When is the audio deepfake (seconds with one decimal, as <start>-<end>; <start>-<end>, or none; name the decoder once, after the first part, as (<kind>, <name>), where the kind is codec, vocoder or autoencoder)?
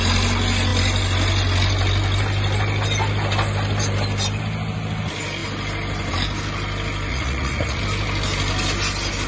7.1-7.8 (vocoder, Vocos)